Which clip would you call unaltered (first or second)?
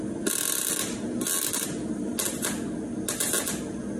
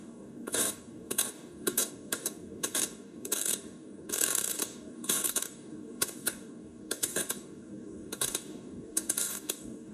first